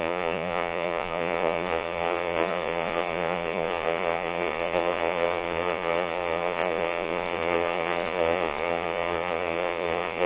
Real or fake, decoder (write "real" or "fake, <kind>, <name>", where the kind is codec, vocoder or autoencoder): fake, vocoder, Vocos